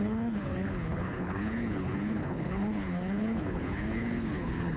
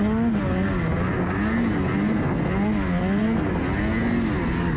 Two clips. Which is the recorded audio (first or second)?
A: second